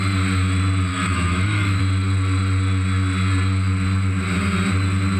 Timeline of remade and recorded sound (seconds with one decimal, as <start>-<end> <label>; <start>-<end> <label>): 0.0-0.9 recorded; 0.9-1.8 remade; 1.8-5.2 recorded